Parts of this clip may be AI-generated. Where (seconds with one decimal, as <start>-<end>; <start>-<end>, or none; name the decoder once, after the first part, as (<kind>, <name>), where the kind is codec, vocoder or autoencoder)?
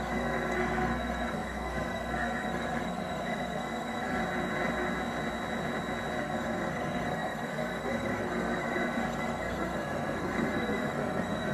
0.0-4.2 (codec, SNAC); 6.2-11.5